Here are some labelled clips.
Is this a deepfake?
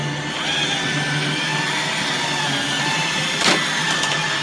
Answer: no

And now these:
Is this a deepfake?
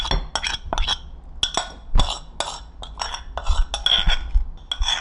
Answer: no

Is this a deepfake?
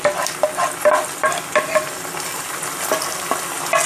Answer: no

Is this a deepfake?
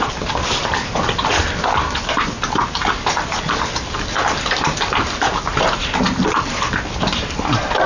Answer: no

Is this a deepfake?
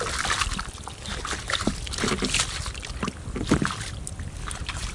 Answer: no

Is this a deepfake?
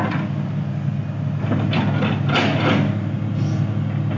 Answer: no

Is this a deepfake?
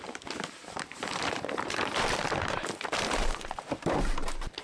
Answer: yes